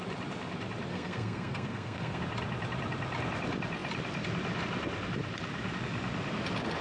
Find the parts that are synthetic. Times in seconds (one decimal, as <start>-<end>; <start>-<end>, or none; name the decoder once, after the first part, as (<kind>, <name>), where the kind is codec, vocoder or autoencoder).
0.9-2.2 (codec, SNAC)